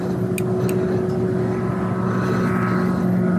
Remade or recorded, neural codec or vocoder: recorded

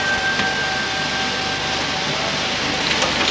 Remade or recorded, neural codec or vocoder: recorded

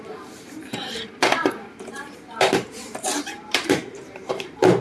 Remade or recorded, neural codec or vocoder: remade, vocoder, BigVGAN v2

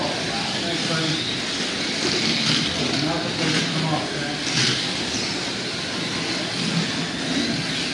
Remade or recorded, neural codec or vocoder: recorded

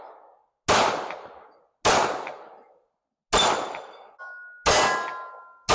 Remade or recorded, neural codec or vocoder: recorded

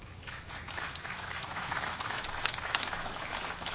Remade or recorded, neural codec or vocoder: remade, autoencoder, DAC-VAE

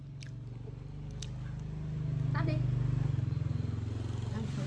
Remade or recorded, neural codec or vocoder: recorded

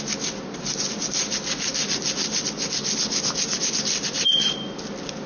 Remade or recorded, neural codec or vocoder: recorded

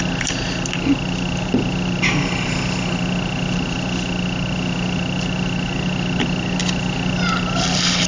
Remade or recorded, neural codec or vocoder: recorded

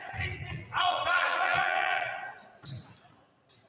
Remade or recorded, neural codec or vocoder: remade, vocoder, Vocos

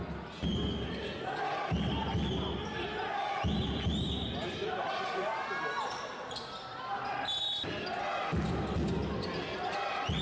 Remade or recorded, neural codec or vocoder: recorded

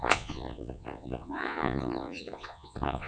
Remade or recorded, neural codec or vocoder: remade, vocoder, Vocos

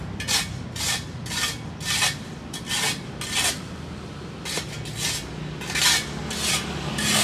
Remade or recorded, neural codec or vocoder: recorded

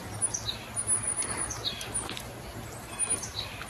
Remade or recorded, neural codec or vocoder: recorded